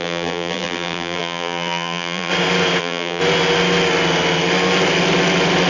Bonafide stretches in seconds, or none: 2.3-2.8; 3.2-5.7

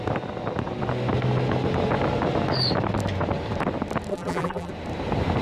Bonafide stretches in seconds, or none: 0.0-4.1; 4.7-5.4

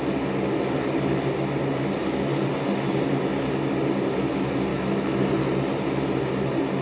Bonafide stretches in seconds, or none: 0.0-4.7; 5.3-6.8

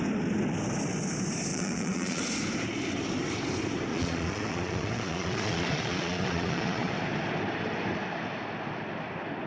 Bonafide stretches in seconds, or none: 0.0-1.5; 2.2-3.9; 6.9-9.5

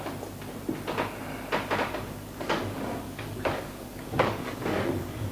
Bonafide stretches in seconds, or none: 0.0-1.8

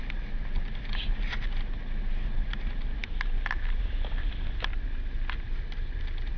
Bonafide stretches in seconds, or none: 0.0-3.0; 3.6-6.4

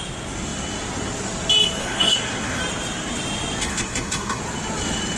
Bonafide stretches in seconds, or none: 0.0-1.8; 2.6-3.6; 4.4-5.2